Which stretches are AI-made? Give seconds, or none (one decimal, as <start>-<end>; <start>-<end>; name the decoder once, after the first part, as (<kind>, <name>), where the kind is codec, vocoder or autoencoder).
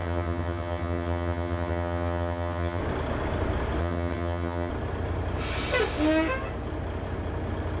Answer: 0.0-2.8 (vocoder, HiFi-GAN); 3.8-4.7